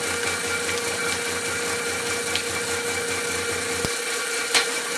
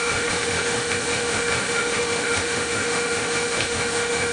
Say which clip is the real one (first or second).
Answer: first